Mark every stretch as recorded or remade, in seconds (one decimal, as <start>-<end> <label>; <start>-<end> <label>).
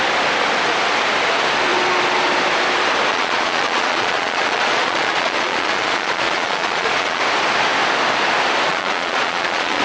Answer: 0.0-3.1 recorded; 3.1-7.2 remade; 7.2-8.7 recorded; 8.7-9.8 remade